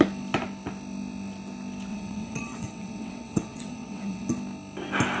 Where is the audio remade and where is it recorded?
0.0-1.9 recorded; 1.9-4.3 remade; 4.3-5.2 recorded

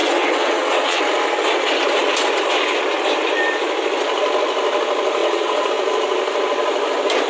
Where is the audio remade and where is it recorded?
0.0-1.0 remade; 1.0-5.2 recorded; 5.2-5.7 remade; 5.7-7.3 recorded

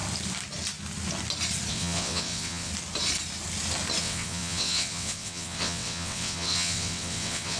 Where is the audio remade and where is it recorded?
0.0-1.7 recorded; 1.7-2.7 remade; 2.7-4.0 recorded; 4.0-7.6 remade